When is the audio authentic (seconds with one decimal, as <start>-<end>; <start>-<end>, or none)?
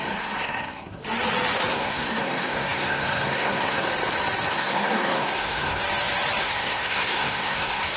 1.0-1.7; 3.9-4.5; 5.8-6.4